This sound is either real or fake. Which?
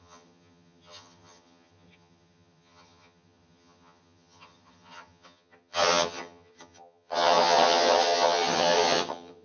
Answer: fake